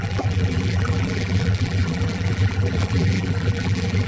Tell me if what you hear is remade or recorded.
remade